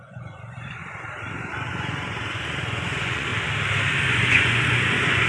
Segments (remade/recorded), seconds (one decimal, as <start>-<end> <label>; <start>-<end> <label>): 0.0-0.8 remade; 0.8-1.5 recorded; 1.5-3.3 remade; 3.3-4.1 recorded; 4.1-5.3 remade